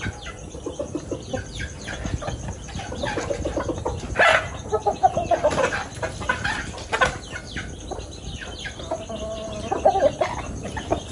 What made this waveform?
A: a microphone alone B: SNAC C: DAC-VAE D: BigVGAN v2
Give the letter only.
A